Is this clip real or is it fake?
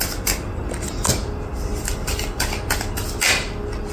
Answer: fake